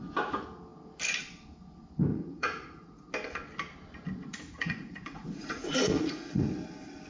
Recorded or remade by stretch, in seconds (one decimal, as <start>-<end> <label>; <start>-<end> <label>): 0.0-2.1 recorded; 2.1-3.1 remade; 3.1-4.3 recorded; 4.3-6.5 remade; 6.5-7.1 recorded